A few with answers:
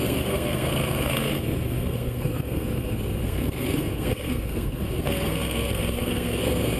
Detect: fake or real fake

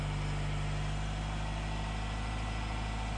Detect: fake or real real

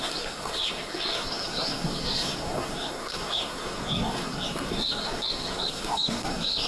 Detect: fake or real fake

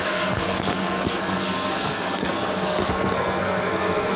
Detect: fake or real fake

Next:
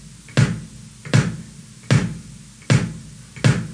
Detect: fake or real real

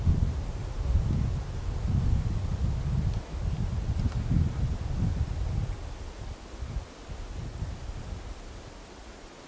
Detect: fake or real real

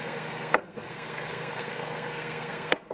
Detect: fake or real fake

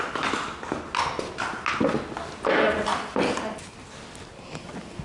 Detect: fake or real real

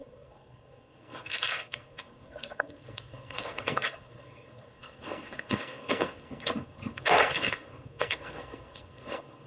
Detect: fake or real fake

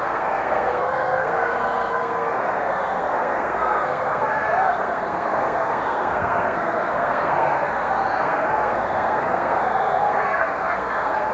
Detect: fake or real fake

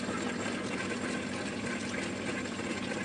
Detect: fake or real real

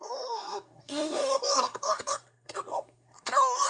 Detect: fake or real fake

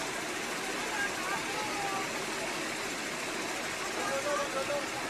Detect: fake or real real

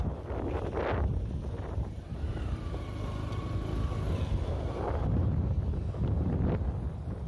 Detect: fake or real real